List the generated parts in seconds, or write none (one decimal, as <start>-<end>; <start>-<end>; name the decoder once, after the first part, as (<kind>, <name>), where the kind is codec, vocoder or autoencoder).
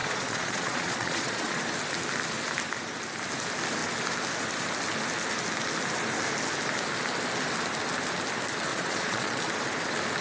0.0-1.6 (vocoder, Vocos); 8.7-9.4